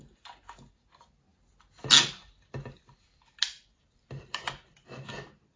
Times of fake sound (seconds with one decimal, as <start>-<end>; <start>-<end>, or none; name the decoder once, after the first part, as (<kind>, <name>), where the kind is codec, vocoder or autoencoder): none